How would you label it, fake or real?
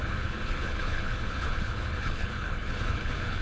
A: fake